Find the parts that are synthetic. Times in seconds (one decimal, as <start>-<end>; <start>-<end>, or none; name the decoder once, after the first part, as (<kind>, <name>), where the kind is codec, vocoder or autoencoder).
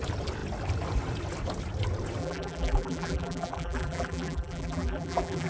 2.2-5.5 (vocoder, BigVGAN v2)